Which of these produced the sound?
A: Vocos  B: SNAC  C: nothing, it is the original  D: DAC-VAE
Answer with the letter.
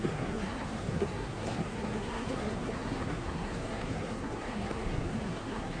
B